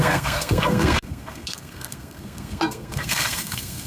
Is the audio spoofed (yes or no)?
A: yes